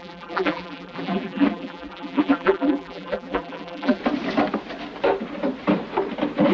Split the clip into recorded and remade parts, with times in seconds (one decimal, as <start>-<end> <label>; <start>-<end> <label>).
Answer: 0.0-4.0 remade; 4.0-6.5 recorded